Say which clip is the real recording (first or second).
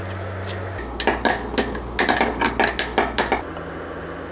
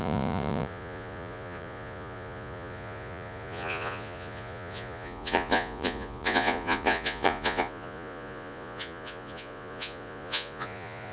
first